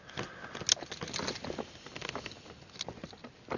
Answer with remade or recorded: recorded